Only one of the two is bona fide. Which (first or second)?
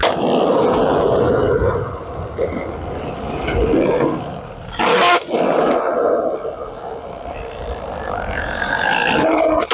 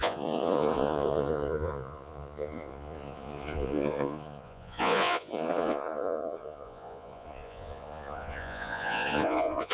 first